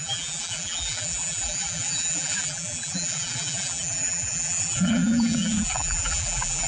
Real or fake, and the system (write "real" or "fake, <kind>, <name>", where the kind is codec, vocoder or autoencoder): fake, vocoder, BigVGAN v2